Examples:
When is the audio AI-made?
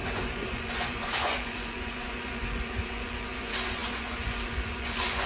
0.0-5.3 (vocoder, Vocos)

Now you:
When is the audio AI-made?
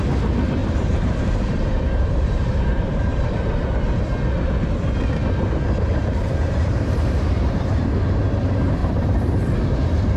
0.6-4.0 (vocoder, BigVGAN v2); 6.0-7.9; 8.8-9.5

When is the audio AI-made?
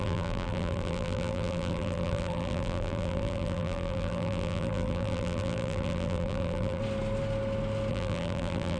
0.0-6.8 (vocoder, BigVGAN v2); 7.9-8.8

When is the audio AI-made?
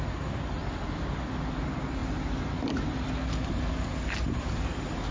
none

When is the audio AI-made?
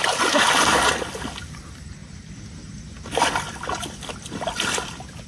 none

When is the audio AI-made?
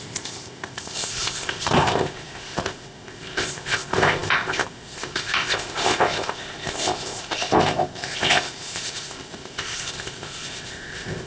0.0-11.3 (codec, ZipCodec)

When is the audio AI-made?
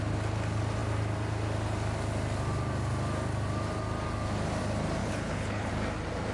5.0-5.7 (codec, HILCodec)